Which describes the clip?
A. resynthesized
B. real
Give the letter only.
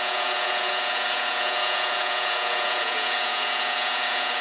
A